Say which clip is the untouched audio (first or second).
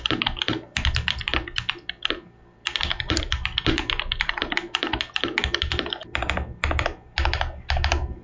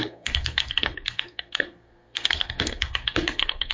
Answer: first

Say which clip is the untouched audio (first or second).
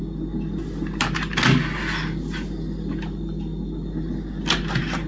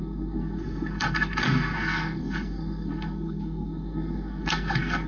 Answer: first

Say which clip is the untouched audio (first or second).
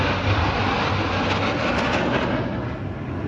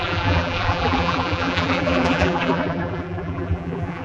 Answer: first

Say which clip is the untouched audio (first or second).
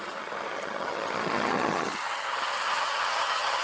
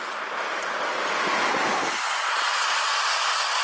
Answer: second